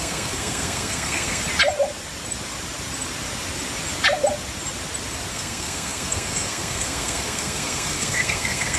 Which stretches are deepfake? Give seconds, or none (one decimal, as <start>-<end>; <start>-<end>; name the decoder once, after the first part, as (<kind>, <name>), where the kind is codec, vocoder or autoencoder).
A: 0.0-1.4 (codec, SNAC); 5.3-8.8